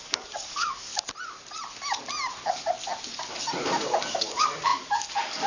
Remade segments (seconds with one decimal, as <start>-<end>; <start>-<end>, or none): 0.0-0.9; 4.2-5.5